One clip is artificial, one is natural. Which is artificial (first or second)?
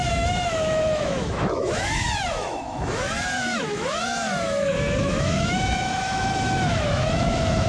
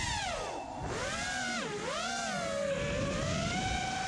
first